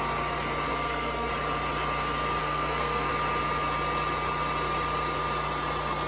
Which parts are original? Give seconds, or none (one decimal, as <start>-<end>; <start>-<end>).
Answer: 0.0-0.7; 1.3-2.4; 3.1-6.1